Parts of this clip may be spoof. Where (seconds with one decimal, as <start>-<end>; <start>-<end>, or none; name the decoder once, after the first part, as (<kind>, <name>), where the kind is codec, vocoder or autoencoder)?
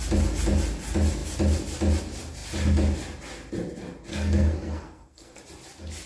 4.1-5.4 (codec, SNAC)